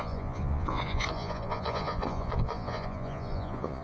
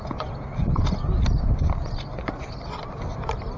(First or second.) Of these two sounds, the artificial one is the first